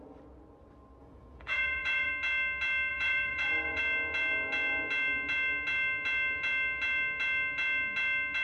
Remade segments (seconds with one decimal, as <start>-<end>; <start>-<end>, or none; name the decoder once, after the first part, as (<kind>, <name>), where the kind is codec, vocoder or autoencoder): 1.0-2.1 (vocoder, Vocos); 2.9-3.8